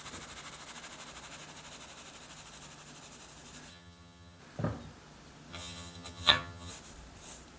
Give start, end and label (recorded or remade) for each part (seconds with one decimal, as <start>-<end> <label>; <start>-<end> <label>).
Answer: 0.0-3.7 recorded; 3.7-4.4 remade; 4.4-5.5 recorded; 5.5-6.7 remade; 6.7-7.6 recorded